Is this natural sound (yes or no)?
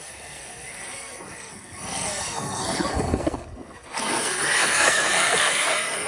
no